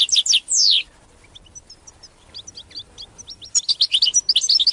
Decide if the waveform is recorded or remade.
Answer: recorded